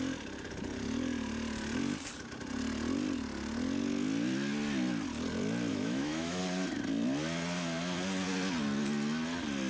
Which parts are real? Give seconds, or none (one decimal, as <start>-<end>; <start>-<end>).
0.0-5.7; 6.4-9.7